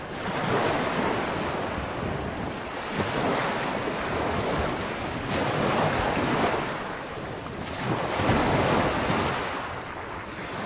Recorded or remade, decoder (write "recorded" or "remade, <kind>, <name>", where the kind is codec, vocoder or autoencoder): recorded